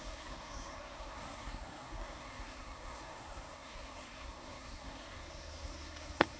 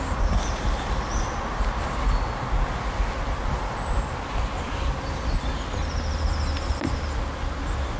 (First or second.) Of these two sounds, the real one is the second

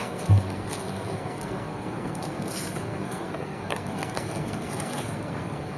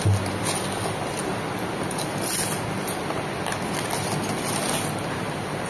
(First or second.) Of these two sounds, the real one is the second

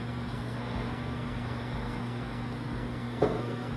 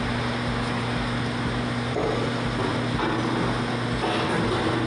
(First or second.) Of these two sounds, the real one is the second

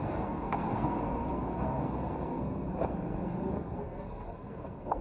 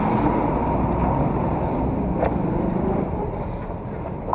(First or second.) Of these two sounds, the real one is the second